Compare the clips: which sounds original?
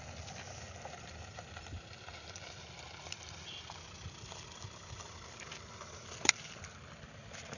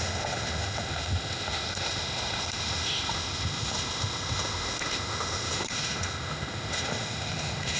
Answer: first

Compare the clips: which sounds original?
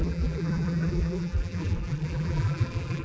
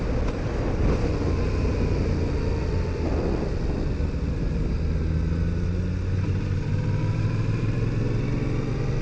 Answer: second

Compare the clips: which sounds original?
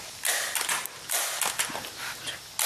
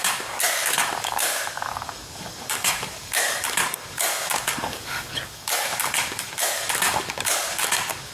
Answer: first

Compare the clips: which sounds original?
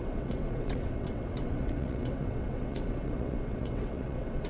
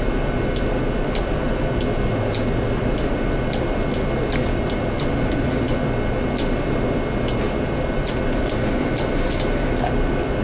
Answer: second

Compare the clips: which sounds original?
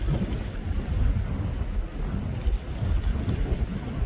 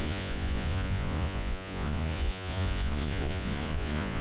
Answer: first